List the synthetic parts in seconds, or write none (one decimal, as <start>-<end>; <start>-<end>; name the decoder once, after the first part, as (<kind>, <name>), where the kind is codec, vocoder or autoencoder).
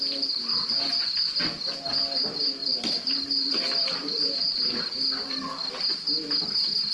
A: 2.6-4.6 (vocoder, BigVGAN v2)